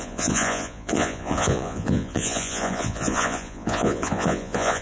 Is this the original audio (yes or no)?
no